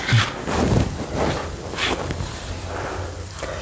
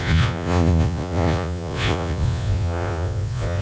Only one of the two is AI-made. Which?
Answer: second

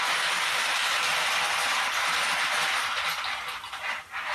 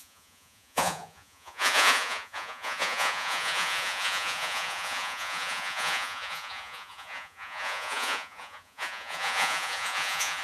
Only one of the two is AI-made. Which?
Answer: second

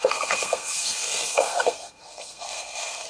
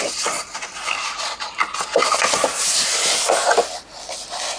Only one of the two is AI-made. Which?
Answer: first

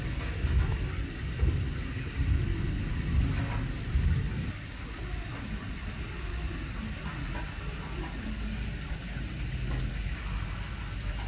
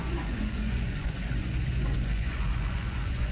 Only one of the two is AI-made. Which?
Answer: second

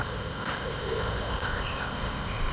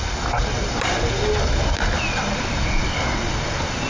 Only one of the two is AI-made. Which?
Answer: first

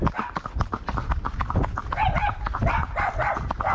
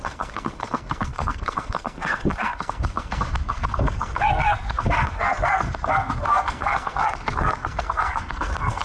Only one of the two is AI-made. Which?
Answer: second